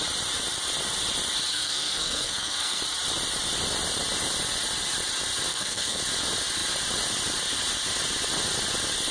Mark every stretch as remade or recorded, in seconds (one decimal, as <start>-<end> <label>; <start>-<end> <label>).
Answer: 0.0-1.5 recorded; 1.5-2.8 remade; 2.8-5.5 recorded; 5.5-6.0 remade; 6.0-9.1 recorded